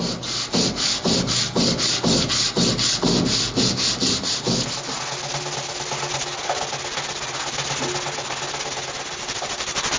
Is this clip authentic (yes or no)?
yes